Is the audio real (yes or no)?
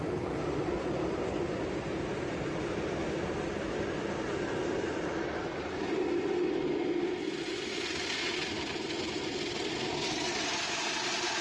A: yes